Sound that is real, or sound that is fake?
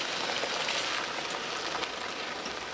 real